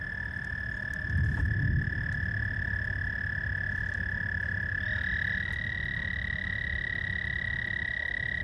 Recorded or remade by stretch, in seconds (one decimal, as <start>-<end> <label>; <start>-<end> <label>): 0.0-8.4 recorded